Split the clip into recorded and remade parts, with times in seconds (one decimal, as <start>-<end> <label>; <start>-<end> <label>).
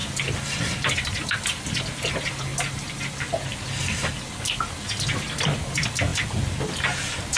0.0-7.4 recorded